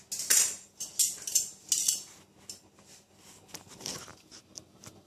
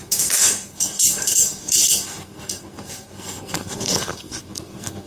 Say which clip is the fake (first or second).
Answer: second